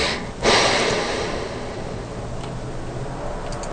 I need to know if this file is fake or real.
real